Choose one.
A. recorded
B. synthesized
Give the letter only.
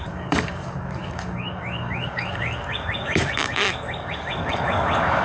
B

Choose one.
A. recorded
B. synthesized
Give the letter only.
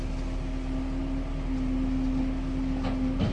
A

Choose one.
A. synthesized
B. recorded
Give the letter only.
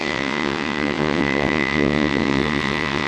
A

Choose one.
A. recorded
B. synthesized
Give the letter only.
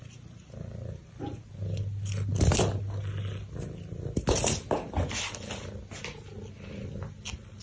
A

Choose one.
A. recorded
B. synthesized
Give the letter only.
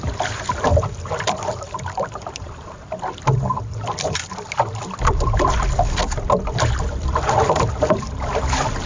B